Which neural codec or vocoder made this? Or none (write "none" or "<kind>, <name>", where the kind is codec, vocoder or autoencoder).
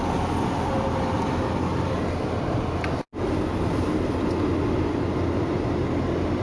none